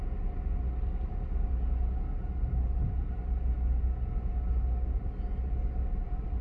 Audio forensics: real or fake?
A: real